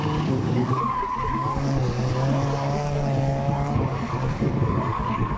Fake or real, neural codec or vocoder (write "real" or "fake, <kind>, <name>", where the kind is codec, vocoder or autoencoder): fake, codec, DAC